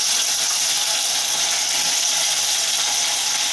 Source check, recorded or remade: recorded